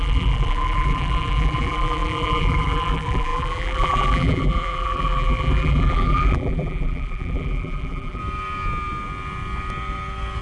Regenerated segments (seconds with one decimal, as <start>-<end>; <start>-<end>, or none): 0.0-8.2

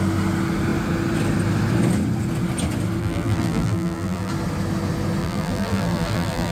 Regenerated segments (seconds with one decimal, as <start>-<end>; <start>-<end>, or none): 3.0-4.3; 5.2-6.5